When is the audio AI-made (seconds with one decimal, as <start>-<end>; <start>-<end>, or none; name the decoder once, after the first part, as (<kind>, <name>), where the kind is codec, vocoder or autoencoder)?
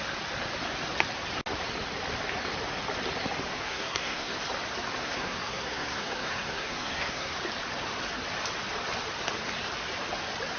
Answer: 3.5-4.3 (codec, SNAC); 5.0-7.3